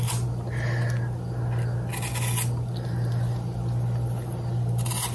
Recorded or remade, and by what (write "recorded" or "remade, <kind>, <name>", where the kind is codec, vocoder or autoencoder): recorded